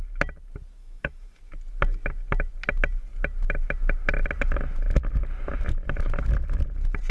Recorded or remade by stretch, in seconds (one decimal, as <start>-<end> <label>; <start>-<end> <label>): 0.0-0.8 recorded; 0.8-1.4 remade; 1.4-7.1 recorded